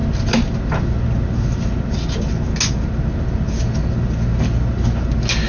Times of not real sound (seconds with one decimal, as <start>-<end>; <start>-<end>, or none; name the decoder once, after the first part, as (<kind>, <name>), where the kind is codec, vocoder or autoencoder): none

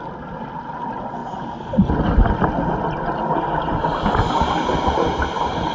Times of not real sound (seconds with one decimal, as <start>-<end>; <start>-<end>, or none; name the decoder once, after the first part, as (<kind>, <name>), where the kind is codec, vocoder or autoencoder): none

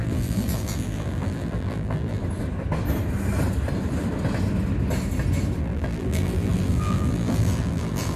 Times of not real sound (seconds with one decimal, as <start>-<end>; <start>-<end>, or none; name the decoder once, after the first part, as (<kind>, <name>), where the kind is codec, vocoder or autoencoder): 0.0-2.2 (vocoder, BigVGAN v2); 5.6-8.2

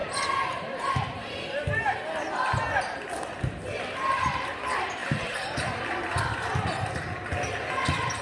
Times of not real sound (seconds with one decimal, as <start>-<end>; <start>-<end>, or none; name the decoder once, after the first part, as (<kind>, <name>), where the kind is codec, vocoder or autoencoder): 5.0-6.2 (vocoder, BigVGAN v2)

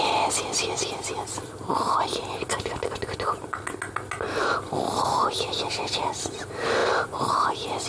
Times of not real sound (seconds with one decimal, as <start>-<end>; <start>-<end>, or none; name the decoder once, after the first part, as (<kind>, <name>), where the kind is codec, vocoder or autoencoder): 6.8-7.3 (vocoder, BigVGAN v2)